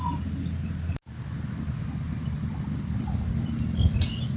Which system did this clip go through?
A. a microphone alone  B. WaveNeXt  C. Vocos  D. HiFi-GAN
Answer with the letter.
A